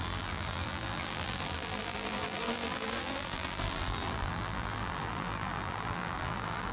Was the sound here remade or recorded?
remade